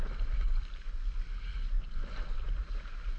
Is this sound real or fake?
real